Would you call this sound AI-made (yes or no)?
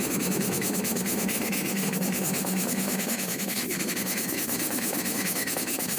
yes